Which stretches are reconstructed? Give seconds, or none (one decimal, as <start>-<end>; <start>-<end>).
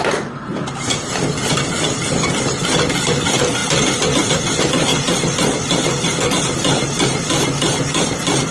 none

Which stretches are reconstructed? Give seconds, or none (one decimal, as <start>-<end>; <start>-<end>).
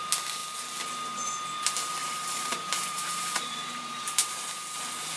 2.0-4.6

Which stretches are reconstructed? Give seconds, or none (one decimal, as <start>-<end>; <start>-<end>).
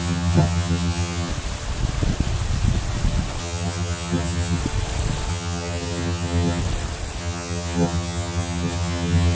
0.0-1.3; 3.4-4.6; 5.3-6.6; 7.2-9.3